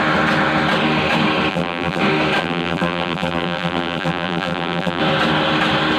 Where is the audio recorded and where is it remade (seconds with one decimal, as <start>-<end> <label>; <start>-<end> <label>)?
0.0-1.5 recorded; 1.5-2.0 remade; 2.0-2.4 recorded; 2.4-5.0 remade; 5.0-6.0 recorded